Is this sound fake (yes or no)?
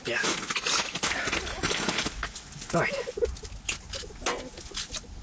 no